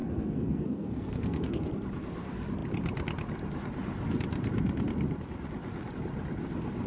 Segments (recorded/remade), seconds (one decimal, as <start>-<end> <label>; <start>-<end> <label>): 0.0-1.7 remade; 1.7-6.9 recorded